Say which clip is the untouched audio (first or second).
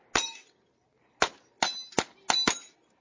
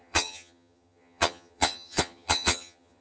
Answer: first